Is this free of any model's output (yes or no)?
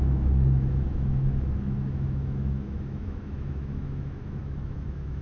no